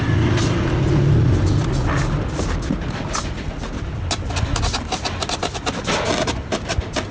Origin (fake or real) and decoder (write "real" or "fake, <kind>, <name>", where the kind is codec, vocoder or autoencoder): real